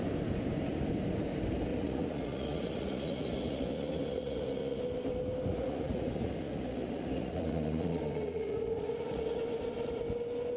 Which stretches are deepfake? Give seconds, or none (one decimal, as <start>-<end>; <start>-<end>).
1.7-4.8; 5.5-9.4